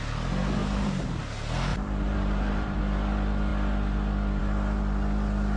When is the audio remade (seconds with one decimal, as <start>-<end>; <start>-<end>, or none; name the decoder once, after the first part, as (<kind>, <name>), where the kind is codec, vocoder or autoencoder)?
0.6-1.2 (vocoder, BigVGAN v2); 1.7-2.8